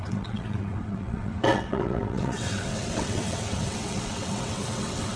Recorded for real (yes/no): no